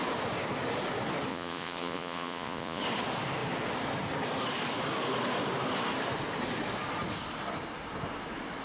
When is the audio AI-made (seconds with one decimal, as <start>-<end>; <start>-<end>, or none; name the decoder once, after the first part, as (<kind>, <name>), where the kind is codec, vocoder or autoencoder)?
1.3-2.8 (vocoder, Vocos)